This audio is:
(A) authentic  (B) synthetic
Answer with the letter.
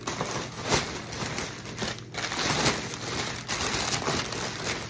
A